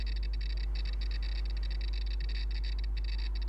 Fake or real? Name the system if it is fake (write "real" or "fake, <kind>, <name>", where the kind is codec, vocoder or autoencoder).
real